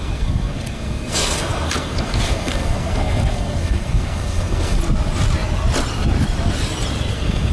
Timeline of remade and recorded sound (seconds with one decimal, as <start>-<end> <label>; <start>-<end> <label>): 0.0-4.8 remade; 4.8-7.1 recorded; 7.1-7.5 remade

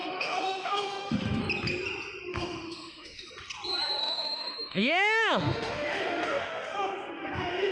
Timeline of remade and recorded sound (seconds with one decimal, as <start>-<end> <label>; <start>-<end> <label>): 0.0-1.4 remade; 1.4-2.3 recorded; 2.3-3.3 remade; 3.3-4.0 recorded; 4.0-7.7 remade

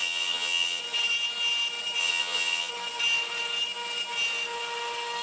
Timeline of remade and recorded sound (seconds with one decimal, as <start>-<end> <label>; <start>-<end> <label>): 0.0-0.8 remade; 0.8-2.0 recorded; 2.0-2.7 remade; 2.7-5.2 recorded

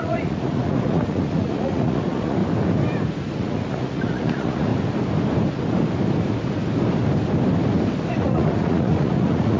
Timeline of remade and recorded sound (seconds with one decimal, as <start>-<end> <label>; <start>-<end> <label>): 0.0-2.4 remade; 2.4-3.4 recorded; 3.4-4.7 remade; 4.7-8.1 recorded; 8.1-9.6 remade

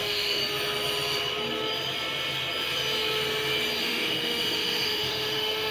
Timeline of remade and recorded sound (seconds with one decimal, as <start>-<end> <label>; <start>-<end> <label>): 0.0-0.4 remade; 0.4-3.8 recorded; 3.8-5.7 remade